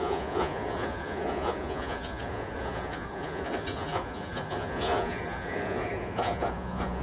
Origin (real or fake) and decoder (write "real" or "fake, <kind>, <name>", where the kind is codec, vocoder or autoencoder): fake, vocoder, Vocos